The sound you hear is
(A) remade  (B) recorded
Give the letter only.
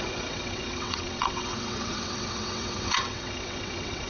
A